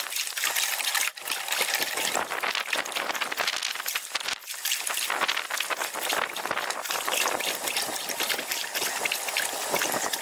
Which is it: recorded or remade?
recorded